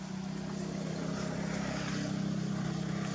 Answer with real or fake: real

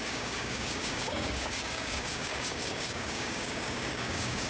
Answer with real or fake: fake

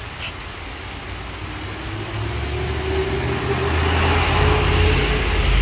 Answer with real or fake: real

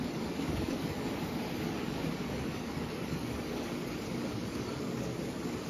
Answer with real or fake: fake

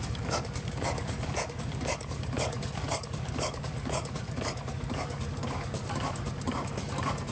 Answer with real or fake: fake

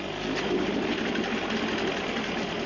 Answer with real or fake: real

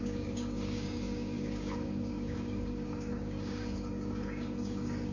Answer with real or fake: fake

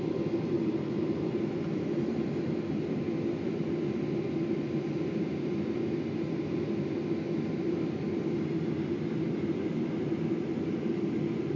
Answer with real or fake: real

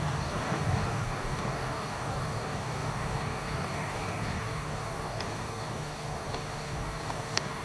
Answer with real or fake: fake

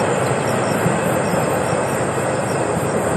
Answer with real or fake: real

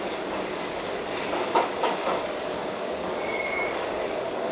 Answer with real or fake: fake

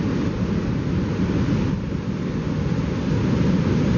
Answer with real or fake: real